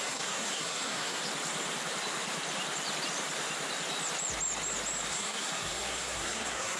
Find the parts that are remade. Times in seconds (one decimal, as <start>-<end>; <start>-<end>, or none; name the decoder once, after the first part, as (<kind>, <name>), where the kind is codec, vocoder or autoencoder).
0.0-1.2 (codec, SNAC); 5.1-6.8